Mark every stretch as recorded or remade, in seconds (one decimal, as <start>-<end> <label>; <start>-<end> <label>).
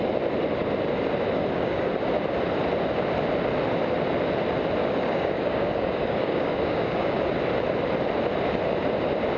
0.0-1.4 recorded; 1.4-1.9 remade; 1.9-4.8 recorded; 4.8-7.2 remade; 7.2-9.4 recorded